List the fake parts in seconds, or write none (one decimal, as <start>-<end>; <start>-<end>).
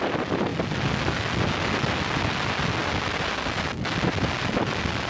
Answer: none